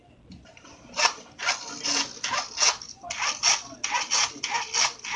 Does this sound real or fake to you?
real